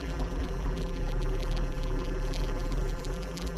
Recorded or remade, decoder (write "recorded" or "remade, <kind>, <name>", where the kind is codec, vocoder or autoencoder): remade, vocoder, BigVGAN v2